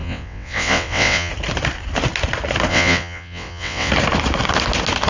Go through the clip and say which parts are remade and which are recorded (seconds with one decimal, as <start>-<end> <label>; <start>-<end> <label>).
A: 0.0-1.3 remade; 1.3-2.7 recorded; 2.7-3.9 remade; 3.9-5.1 recorded